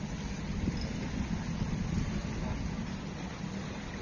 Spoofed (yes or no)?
no